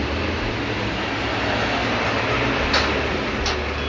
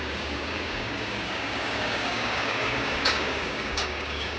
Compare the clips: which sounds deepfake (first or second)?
second